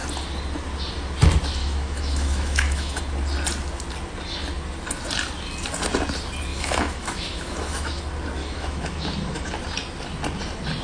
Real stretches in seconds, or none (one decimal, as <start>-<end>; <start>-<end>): 0.0-1.6; 3.0-6.5; 8.0-8.4; 9.5-10.8